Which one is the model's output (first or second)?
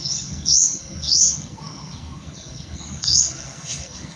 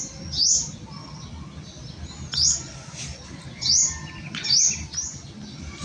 first